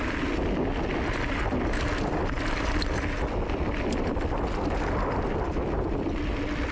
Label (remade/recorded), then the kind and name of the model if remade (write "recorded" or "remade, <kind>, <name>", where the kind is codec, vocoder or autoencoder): recorded